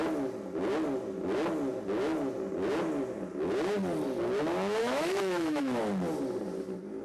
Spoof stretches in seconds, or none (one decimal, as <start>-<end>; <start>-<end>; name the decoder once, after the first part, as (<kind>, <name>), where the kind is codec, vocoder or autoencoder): 4.8-5.8 (autoencoder, DAC-VAE)

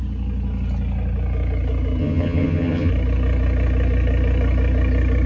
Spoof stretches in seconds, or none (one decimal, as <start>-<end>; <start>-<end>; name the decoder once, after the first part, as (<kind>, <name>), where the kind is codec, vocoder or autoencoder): 2.0-2.9 (vocoder, HiFi-GAN)

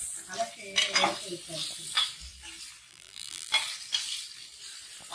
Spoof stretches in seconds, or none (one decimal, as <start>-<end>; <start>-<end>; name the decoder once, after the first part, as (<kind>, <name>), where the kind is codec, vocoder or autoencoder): 2.9-3.5 (vocoder, BigVGAN v2)

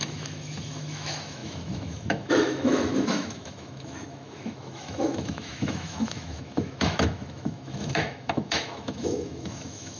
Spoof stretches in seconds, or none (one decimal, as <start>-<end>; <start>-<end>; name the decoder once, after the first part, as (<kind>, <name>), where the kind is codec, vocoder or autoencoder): 0.0-10.0 (autoencoder, DAC-VAE)